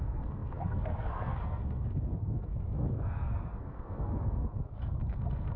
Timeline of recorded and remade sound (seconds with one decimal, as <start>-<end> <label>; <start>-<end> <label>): 0.0-5.6 remade